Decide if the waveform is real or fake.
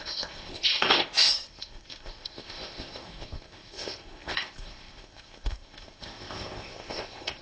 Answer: fake